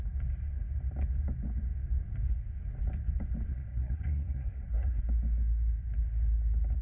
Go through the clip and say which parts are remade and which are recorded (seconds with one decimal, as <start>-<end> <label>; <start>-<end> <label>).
0.0-3.5 recorded; 3.5-5.0 remade; 5.0-6.8 recorded